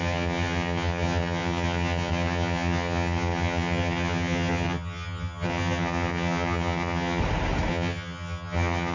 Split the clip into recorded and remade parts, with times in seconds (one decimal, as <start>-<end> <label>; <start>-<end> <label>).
0.0-7.2 remade; 7.2-7.7 recorded; 7.7-8.9 remade